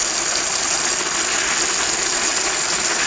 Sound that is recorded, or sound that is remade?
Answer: recorded